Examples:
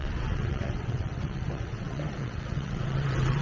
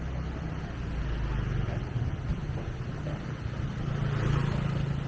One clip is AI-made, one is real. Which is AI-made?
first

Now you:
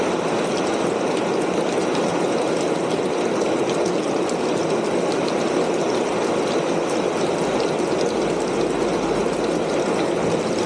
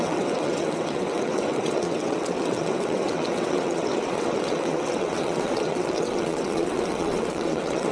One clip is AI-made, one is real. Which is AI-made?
second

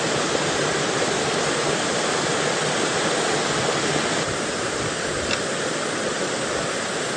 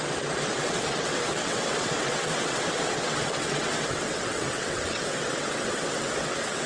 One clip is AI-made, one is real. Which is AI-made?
second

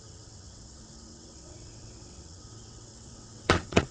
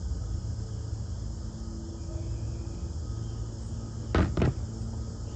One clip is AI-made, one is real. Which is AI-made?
first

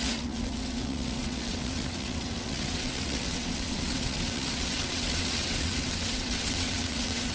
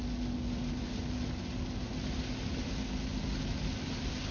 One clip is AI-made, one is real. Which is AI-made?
first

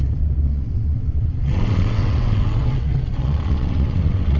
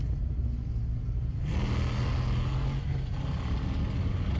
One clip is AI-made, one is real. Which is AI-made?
first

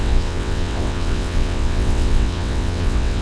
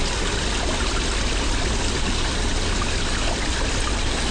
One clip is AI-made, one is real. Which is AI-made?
first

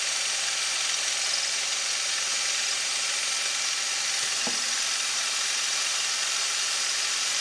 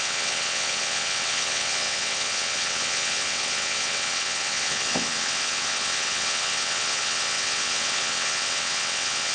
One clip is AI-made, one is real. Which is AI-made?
second